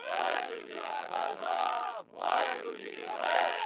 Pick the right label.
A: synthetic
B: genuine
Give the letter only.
A